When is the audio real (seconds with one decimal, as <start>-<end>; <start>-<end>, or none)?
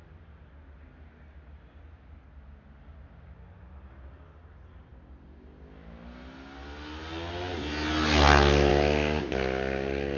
0.0-10.2